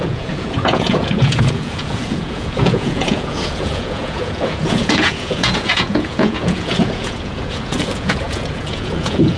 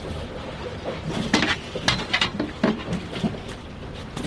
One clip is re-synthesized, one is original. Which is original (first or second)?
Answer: second